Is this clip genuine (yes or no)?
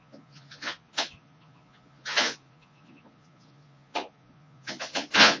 no